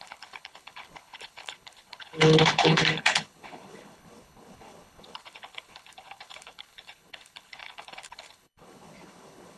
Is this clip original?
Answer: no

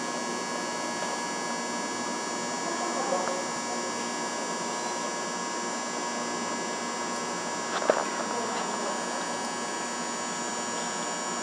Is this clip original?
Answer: yes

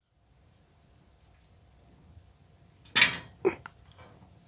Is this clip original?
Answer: yes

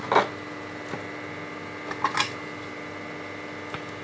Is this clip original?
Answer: yes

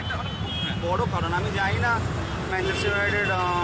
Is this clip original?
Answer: yes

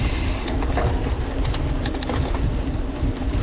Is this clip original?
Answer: yes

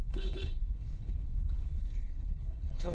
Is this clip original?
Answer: no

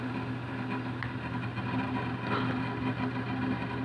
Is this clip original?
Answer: yes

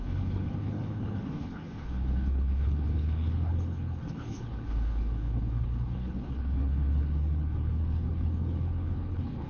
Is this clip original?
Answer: no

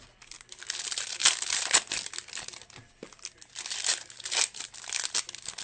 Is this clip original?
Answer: yes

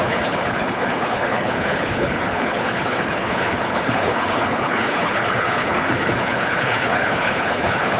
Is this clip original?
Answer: no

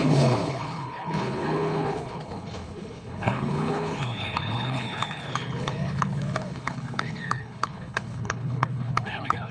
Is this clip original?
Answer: no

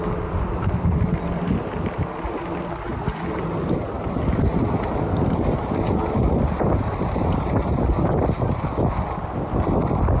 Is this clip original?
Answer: yes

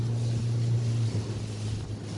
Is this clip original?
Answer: yes